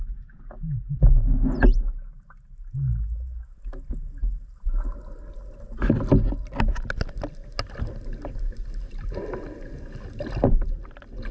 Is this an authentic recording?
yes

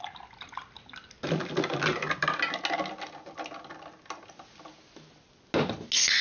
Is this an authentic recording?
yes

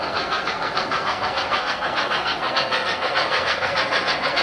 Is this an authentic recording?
no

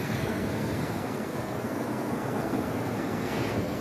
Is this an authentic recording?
no